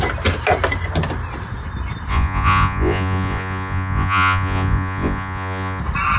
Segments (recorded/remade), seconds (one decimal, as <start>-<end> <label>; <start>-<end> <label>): 0.0-2.1 recorded; 2.1-5.8 remade; 5.8-6.2 recorded